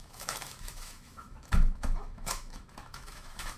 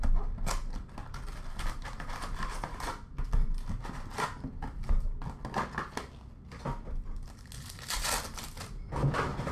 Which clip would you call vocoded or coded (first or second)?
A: first